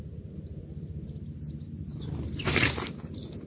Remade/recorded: recorded